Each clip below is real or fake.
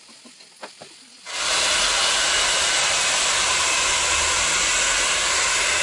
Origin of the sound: real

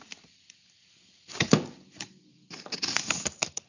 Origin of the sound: real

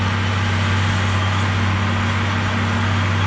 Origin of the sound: real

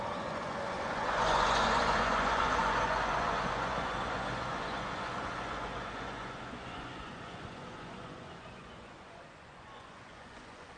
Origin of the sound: fake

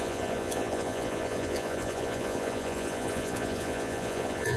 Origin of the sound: fake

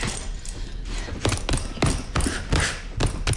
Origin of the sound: real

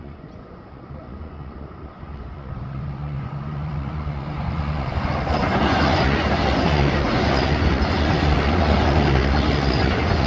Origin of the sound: fake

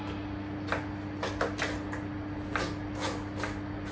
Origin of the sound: real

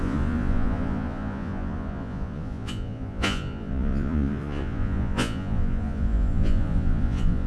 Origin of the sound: fake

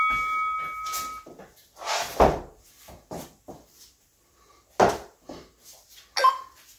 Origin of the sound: real